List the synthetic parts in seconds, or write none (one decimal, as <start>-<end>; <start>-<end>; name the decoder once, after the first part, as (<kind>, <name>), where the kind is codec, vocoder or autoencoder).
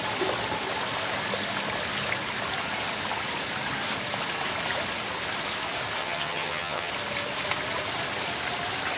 6.0-6.9 (vocoder, HiFi-GAN)